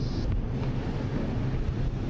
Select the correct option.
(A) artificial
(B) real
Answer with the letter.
B